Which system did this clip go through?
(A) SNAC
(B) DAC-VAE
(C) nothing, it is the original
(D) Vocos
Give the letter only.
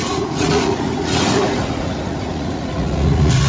D